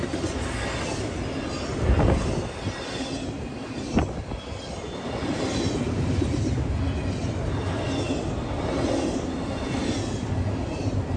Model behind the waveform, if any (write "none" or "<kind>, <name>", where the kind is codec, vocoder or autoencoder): none